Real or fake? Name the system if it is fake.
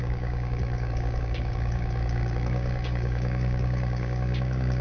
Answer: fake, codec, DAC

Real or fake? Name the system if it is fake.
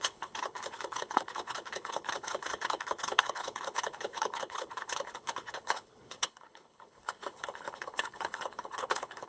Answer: fake, codec, HILCodec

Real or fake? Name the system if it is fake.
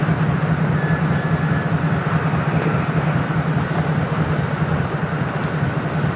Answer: real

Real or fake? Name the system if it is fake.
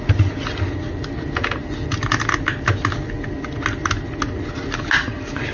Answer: real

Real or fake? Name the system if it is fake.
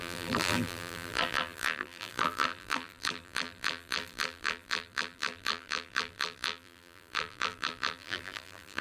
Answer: fake, vocoder, BigVGAN v2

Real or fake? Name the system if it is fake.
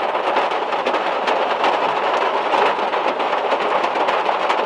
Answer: real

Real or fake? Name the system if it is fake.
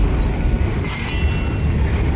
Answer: real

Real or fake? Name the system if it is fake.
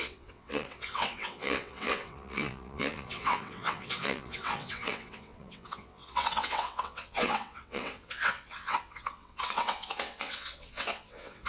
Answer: fake, vocoder, WaveNeXt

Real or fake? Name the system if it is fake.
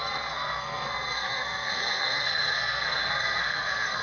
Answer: fake, codec, SNAC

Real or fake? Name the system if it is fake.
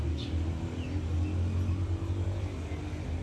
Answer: real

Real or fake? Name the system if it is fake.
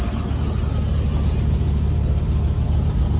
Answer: real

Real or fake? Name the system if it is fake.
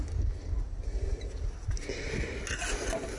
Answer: real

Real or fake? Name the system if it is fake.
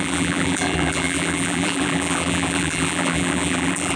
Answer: fake, vocoder, BigVGAN v2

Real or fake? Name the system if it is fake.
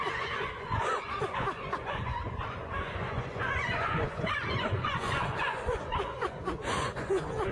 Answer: fake, vocoder, Vocos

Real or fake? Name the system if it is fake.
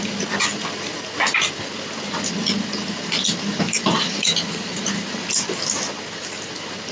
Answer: fake, vocoder, BigVGAN v2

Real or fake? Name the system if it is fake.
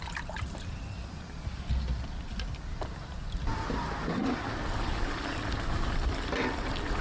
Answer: real